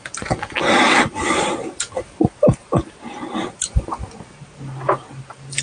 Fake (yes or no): no